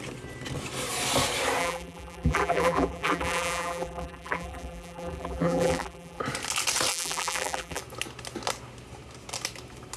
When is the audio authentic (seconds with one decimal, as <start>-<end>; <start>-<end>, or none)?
0.0-1.6; 6.2-6.9; 7.8-10.0